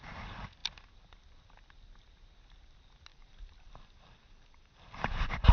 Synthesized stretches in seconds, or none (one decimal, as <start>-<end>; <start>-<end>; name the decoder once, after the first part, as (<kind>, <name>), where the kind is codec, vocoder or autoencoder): 3.1-5.1 (vocoder, BigVGAN v2)